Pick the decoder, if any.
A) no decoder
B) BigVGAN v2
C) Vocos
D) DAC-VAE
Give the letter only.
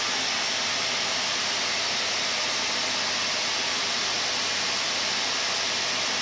A